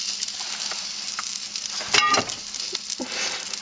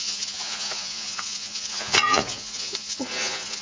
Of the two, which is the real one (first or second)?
first